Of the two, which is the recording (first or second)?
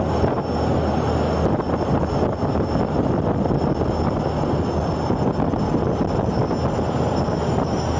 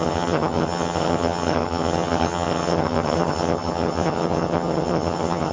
first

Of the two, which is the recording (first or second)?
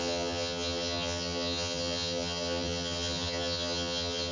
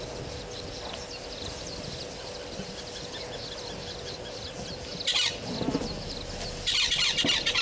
second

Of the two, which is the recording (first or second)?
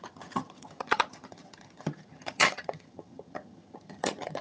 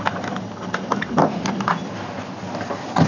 second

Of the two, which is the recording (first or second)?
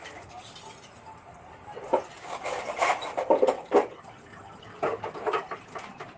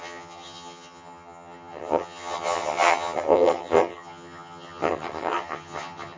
first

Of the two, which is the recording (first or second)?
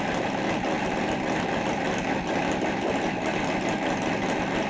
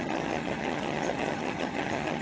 first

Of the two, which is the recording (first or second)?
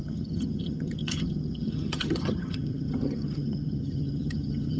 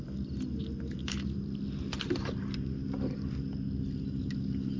second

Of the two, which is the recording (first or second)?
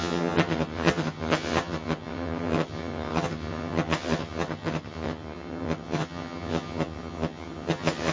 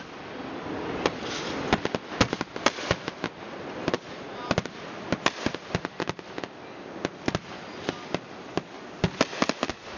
second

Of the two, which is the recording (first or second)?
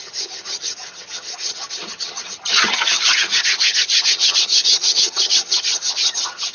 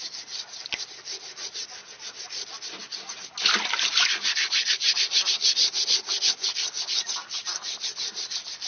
second